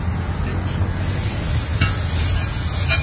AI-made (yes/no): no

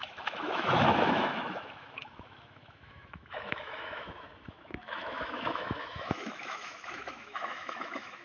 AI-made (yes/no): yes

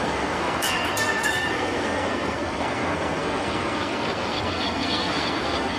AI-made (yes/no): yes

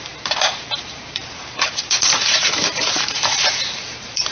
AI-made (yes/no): yes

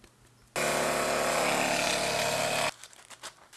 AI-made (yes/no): no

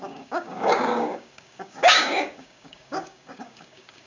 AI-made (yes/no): yes